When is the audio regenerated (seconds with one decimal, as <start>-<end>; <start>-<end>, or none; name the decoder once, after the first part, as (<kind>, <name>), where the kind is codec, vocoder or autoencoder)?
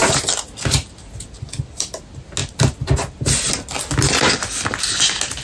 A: none